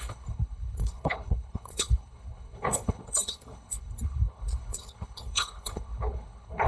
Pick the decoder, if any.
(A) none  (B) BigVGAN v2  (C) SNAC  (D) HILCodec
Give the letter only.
D